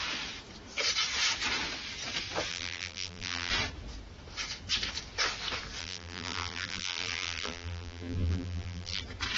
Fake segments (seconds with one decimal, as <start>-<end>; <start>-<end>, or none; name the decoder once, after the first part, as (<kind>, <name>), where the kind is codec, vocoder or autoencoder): 2.5-3.5 (vocoder, BigVGAN v2); 5.8-9.0